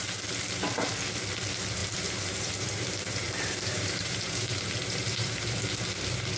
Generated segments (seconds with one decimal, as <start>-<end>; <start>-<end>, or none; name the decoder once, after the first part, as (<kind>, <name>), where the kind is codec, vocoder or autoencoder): 1.8-5.6 (vocoder, BigVGAN v2)